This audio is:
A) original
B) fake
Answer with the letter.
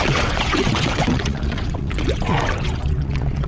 B